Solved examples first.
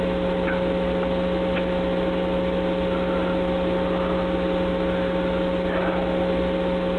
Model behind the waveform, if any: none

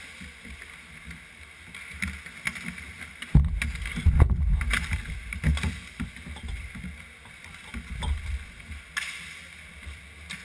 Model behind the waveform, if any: none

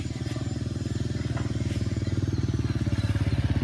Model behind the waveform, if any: none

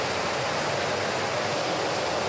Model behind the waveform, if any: none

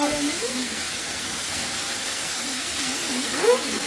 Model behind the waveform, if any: codec, SNAC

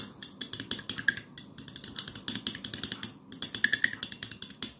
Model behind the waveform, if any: none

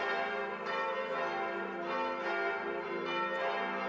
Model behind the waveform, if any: none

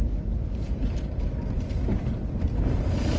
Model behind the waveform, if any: vocoder, BigVGAN v2